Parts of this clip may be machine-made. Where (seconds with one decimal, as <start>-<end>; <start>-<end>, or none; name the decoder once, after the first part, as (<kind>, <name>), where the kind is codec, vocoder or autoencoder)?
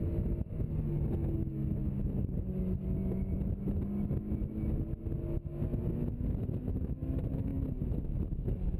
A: none